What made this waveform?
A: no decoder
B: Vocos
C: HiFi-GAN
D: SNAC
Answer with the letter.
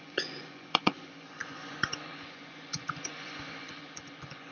B